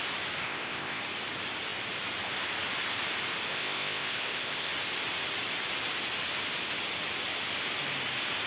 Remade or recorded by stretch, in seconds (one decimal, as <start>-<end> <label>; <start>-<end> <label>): 0.0-0.4 recorded; 0.4-1.0 remade; 1.0-3.5 recorded; 3.5-4.7 remade; 4.7-8.5 recorded

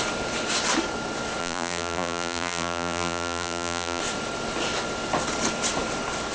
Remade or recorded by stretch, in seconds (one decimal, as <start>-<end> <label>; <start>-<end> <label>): 0.0-1.4 recorded; 1.4-4.0 remade; 4.0-6.3 recorded

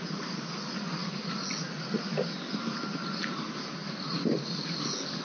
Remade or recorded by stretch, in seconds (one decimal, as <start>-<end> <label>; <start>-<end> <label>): 0.0-5.2 recorded

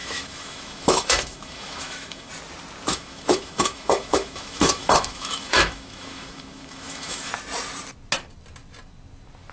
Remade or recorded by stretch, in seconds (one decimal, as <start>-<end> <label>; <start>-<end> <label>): 0.0-2.3 remade; 2.3-2.9 recorded; 2.9-7.3 remade; 7.3-9.5 recorded

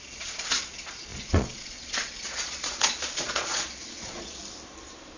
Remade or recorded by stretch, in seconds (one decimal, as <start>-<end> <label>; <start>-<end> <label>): 0.0-4.4 remade; 4.4-5.2 recorded

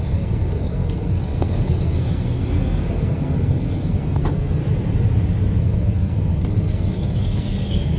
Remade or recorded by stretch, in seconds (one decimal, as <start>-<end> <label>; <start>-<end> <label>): 0.0-4.6 remade; 4.6-5.6 recorded; 5.6-8.0 remade